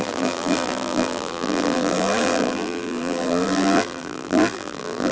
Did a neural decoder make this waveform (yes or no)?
yes